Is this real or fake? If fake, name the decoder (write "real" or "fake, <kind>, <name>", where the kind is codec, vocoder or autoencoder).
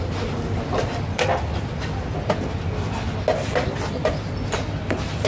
real